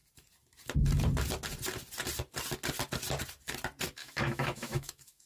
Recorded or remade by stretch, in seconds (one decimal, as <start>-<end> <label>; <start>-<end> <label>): 0.0-4.0 recorded; 4.0-5.3 remade